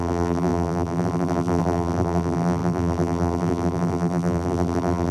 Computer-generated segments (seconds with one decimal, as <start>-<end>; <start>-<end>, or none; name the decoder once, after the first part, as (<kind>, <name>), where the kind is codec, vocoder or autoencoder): 0.0-5.1 (vocoder, BigVGAN v2)